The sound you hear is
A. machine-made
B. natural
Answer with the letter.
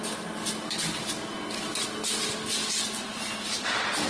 B